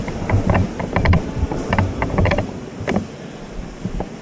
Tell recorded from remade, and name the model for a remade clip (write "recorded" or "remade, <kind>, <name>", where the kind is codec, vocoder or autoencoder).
remade, vocoder, BigVGAN v2